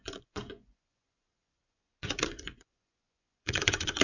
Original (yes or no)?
no